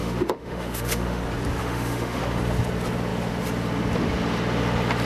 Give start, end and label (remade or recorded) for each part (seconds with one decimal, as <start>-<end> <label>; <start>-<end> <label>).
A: 0.0-1.2 remade; 1.2-1.6 recorded; 1.6-2.2 remade; 2.2-5.1 recorded